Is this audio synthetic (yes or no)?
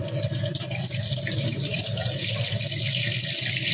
yes